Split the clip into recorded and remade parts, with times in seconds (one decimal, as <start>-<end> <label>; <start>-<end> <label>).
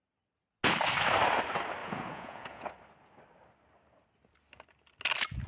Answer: 0.0-1.8 recorded; 1.8-2.7 remade; 2.7-5.5 recorded